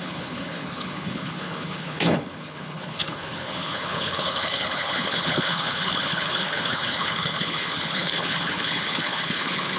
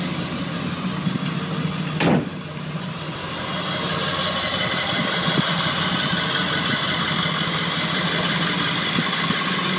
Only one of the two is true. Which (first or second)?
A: second